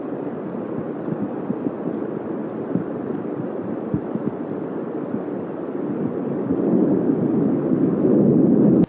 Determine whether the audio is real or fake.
real